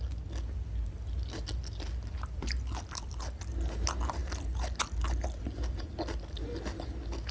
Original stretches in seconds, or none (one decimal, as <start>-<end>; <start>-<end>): 0.0-7.3